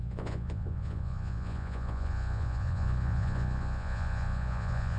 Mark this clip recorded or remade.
remade